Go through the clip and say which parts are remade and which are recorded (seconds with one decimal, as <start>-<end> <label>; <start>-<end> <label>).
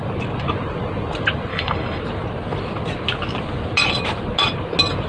0.0-1.5 recorded; 1.5-2.0 remade; 2.0-5.1 recorded